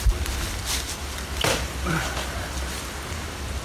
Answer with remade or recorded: remade